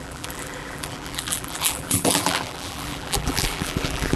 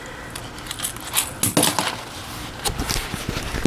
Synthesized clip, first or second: first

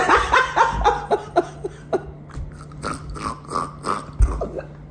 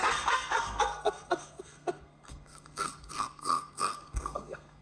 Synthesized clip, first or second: second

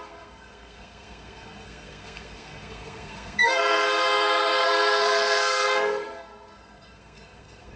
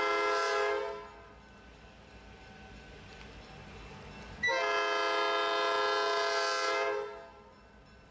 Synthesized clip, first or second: first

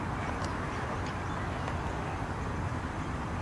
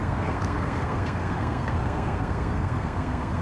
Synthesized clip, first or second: second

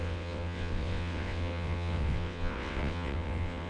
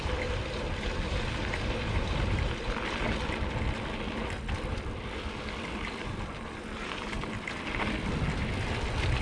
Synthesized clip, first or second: first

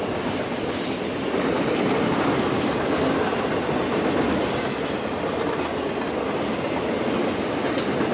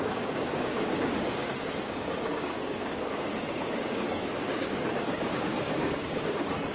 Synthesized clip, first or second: second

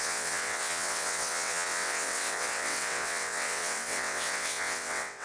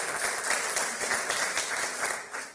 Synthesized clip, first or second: first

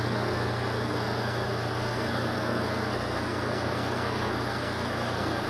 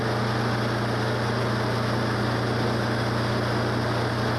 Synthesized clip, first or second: first